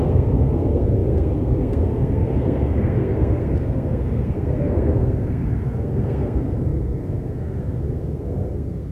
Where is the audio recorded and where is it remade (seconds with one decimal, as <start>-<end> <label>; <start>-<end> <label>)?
0.0-8.9 remade